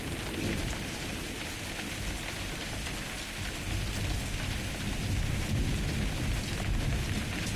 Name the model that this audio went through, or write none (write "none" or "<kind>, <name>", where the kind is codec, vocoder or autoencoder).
none